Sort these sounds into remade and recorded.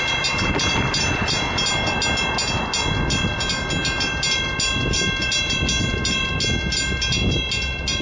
recorded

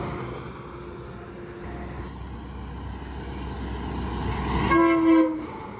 recorded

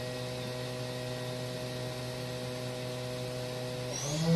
recorded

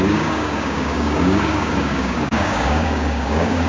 remade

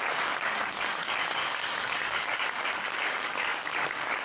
remade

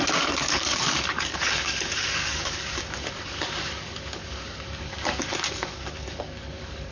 remade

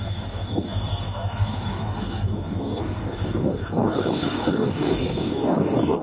remade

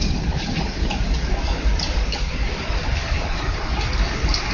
remade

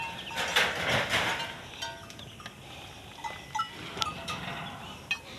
recorded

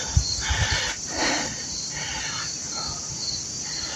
recorded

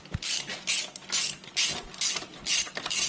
recorded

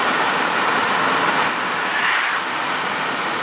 recorded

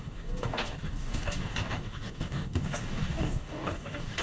remade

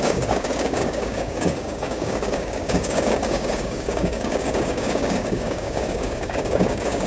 remade